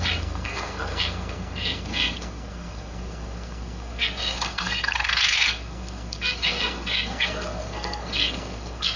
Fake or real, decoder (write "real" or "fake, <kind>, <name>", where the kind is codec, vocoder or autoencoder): fake, codec, SNAC